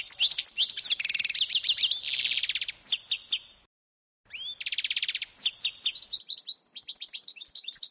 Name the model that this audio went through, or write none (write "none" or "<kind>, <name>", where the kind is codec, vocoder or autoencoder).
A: none